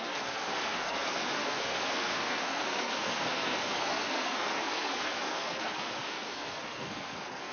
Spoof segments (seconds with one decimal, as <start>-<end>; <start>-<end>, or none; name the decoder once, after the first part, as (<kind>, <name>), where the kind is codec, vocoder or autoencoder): 0.0-7.5 (codec, SNAC)